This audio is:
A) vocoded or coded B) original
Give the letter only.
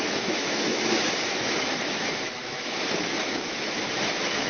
A